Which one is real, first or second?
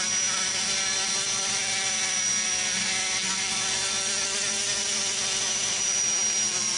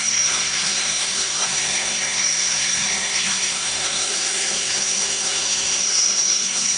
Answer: first